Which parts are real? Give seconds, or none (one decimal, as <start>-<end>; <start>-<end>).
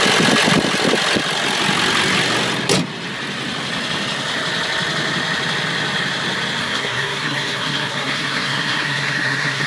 0.0-6.6